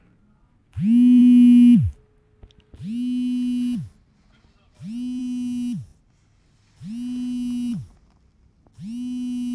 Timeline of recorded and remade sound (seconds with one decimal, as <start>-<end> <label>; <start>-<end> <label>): 0.0-9.5 recorded